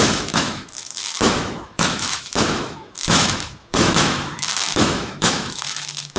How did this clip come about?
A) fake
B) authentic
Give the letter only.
A